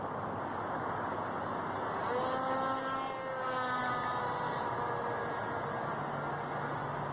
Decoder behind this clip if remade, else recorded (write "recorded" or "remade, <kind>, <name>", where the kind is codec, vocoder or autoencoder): recorded